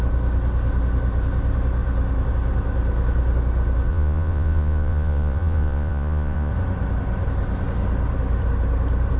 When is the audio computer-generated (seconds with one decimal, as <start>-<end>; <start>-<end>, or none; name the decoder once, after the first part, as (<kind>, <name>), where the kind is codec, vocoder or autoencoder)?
3.9-6.5 (vocoder, Vocos)